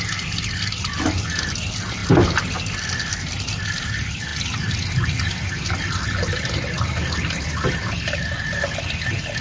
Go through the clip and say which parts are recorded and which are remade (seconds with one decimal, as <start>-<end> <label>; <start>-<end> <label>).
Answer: 0.0-9.4 recorded